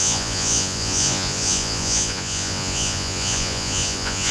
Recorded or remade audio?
remade